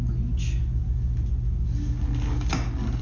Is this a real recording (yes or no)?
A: yes